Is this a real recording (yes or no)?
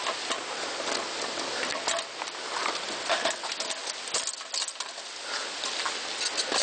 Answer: yes